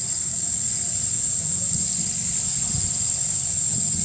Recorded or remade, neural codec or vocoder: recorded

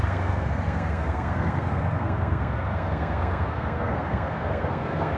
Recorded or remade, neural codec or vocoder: remade, codec, SNAC